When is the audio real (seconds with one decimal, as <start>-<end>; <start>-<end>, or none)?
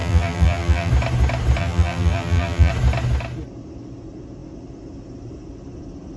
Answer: 0.9-1.6; 2.7-6.2